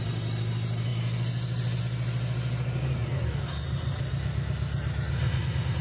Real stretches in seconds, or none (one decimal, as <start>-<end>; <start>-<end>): 0.0-5.8

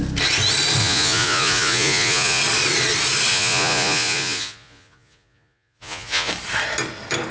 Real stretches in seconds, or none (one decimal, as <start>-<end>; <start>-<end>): 0.0-0.8; 2.4-3.3; 6.3-7.3

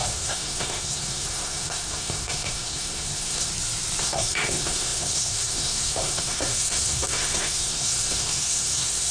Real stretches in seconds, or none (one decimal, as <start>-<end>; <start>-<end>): 3.5-4.0

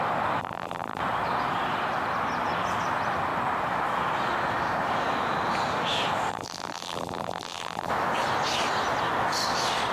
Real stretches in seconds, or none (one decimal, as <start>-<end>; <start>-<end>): 0.0-0.4; 1.0-6.3; 7.9-9.9